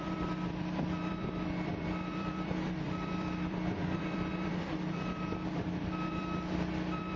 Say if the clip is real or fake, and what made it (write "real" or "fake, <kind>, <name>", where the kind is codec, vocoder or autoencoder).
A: fake, vocoder, BigVGAN v2